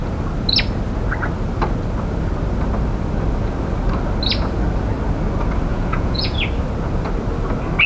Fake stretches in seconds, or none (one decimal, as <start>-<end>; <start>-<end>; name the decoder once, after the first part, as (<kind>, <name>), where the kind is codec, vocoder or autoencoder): 5.7-6.4 (vocoder, Vocos)